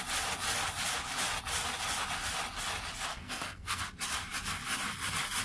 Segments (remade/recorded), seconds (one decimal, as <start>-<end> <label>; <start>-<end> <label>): 0.0-3.1 recorded; 3.1-3.8 remade; 3.8-5.4 recorded

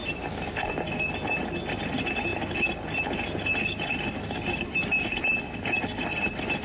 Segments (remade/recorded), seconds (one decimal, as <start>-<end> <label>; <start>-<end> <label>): 0.0-6.6 recorded

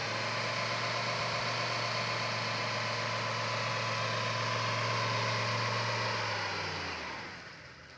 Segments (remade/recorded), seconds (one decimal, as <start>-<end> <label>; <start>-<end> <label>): 0.0-8.0 recorded

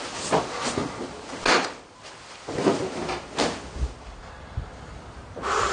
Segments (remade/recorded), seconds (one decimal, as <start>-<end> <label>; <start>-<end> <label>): 0.0-5.7 recorded

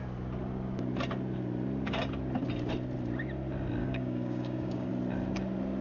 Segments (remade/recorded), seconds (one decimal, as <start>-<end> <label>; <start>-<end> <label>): 0.0-3.8 recorded; 3.8-4.9 remade; 4.9-5.8 recorded